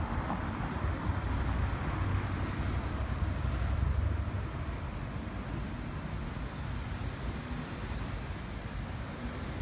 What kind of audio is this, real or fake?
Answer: real